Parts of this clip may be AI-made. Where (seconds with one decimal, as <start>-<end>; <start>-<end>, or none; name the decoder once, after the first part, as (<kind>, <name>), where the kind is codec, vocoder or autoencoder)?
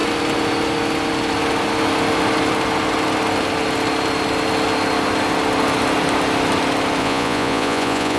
7.0-8.2 (vocoder, Vocos)